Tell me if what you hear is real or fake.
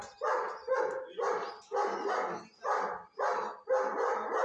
real